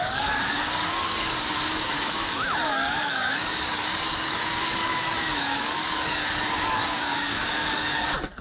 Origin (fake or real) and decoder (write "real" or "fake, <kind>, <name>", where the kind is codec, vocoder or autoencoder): fake, codec, DAC